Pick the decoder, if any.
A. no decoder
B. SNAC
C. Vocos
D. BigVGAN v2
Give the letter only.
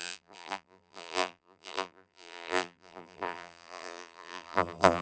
D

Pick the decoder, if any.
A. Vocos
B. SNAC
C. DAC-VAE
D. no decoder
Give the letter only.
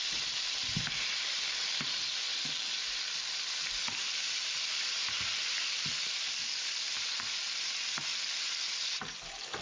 D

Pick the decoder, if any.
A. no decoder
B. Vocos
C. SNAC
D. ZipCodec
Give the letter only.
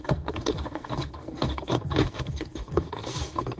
C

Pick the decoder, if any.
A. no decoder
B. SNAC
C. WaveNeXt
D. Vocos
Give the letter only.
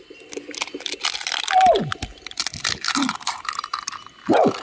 A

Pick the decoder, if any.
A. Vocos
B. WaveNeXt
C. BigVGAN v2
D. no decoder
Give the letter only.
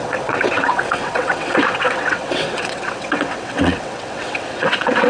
B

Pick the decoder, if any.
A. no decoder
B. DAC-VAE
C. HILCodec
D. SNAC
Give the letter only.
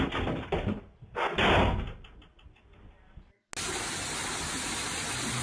A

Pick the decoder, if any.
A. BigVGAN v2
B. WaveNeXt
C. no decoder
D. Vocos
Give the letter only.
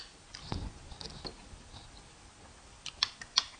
C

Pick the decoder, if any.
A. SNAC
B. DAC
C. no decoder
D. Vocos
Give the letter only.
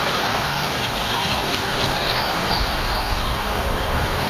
B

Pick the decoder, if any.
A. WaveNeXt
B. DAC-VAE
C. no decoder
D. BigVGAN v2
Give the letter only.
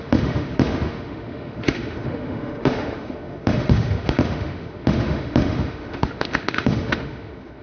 B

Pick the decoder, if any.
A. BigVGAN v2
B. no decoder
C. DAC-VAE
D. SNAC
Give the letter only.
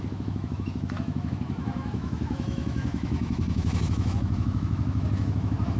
C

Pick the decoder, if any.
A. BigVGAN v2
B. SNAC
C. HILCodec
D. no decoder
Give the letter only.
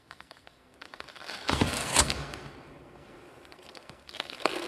B